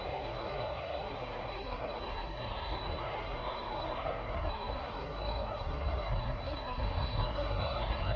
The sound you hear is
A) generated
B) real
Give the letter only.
A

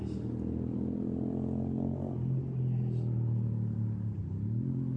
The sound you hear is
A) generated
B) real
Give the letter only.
B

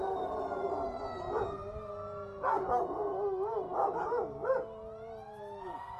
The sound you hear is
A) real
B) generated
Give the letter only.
A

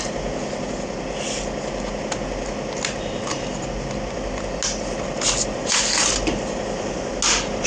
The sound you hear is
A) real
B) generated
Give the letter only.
A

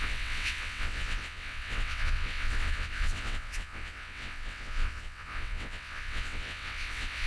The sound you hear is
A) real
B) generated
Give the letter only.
B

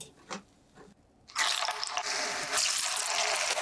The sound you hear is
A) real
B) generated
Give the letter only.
A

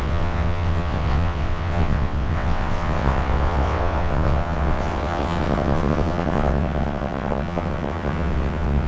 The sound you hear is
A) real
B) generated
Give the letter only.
B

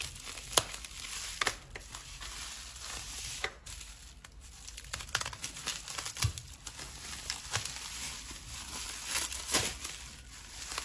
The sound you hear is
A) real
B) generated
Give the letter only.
A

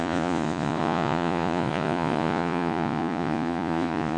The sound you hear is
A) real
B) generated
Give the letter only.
B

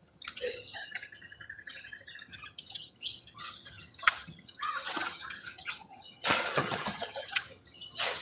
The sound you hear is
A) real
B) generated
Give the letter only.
B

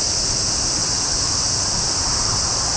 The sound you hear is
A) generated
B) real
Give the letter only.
A